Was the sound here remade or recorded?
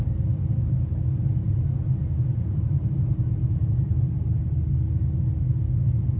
recorded